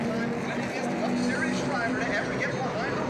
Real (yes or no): yes